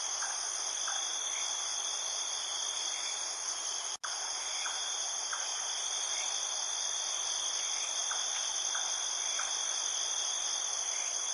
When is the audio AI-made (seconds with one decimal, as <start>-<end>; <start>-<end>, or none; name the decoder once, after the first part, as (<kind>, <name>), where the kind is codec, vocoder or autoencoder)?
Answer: 1.7-2.3 (vocoder, BigVGAN v2); 5.5-6.2

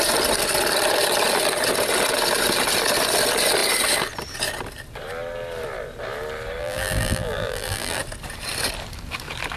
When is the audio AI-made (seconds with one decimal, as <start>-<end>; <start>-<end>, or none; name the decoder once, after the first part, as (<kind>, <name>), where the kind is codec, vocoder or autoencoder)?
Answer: 6.6-8.0 (vocoder, BigVGAN v2)

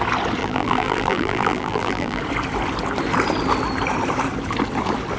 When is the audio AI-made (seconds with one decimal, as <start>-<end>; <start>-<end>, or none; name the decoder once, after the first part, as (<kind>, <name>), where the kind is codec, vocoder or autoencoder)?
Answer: 0.4-2.2 (vocoder, BigVGAN v2)

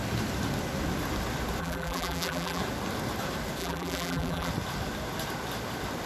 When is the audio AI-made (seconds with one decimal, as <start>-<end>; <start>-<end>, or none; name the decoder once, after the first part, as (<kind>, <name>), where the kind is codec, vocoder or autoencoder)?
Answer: 1.6-2.6 (vocoder, BigVGAN v2); 3.6-4.5

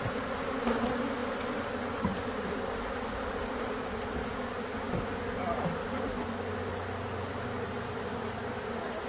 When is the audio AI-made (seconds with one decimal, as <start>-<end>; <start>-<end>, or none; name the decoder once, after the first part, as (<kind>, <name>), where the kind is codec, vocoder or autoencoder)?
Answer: none